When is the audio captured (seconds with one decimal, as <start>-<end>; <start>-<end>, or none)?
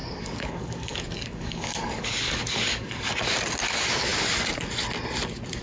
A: 3.2-5.6